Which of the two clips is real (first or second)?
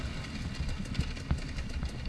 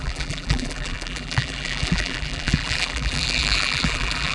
first